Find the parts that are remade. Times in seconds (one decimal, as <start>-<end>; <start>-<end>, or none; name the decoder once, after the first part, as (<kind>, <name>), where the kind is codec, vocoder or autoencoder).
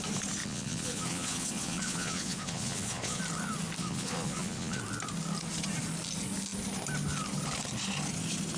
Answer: 0.4-3.2 (vocoder, Vocos); 3.8-4.8